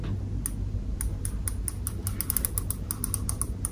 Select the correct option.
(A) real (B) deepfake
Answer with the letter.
A